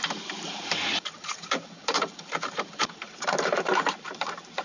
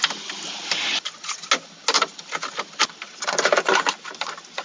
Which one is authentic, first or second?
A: second